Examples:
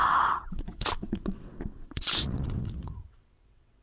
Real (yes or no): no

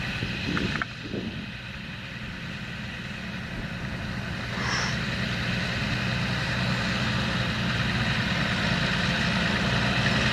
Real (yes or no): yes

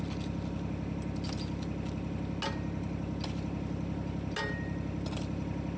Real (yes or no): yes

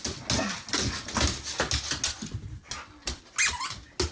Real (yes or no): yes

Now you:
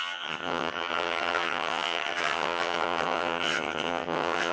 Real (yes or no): no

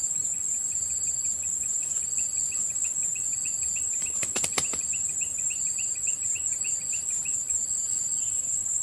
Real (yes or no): yes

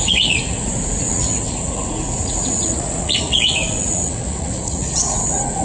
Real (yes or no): no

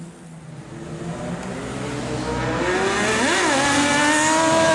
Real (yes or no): yes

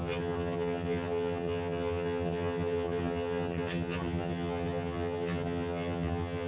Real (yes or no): no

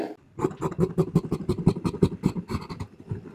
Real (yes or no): yes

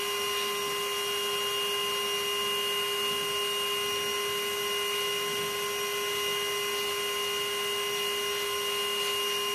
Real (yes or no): yes